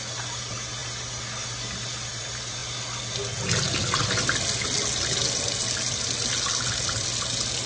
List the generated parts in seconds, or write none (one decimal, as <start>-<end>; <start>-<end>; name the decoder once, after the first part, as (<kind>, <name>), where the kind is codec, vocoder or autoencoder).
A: none